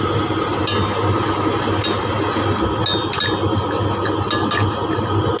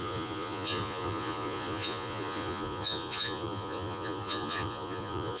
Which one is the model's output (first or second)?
second